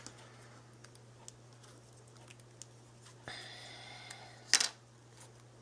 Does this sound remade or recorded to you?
recorded